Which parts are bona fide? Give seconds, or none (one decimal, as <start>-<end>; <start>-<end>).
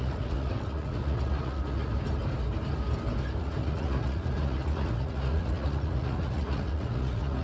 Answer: 1.9-3.4